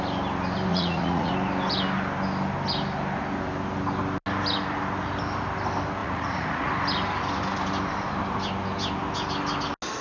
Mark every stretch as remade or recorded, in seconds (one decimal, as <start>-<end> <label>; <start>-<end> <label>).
0.0-0.7 recorded; 0.7-1.3 remade; 1.3-6.0 recorded; 6.0-6.7 remade; 6.7-10.0 recorded